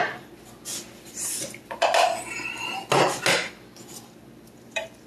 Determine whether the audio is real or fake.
real